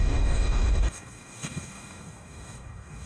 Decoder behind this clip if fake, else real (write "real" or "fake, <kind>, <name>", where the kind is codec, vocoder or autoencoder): fake, codec, DAC